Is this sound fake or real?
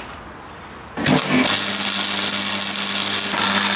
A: real